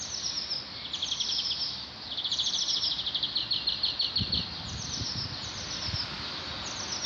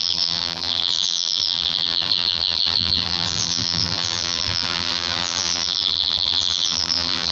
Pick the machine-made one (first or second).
second